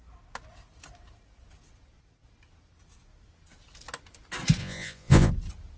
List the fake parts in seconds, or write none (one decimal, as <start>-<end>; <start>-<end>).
4.6-5.3